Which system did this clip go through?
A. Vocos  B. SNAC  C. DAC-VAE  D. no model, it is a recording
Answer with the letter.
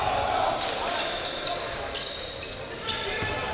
D